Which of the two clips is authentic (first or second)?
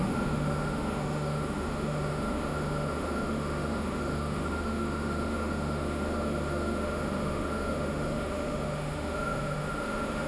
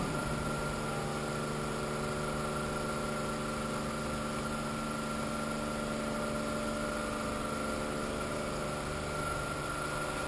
second